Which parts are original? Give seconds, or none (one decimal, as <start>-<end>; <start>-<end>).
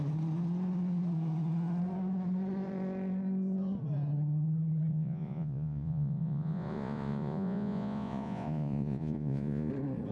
0.0-4.9; 9.7-10.1